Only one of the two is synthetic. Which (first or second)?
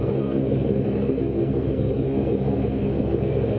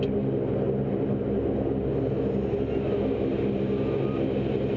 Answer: first